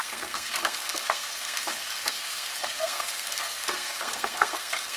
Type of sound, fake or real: fake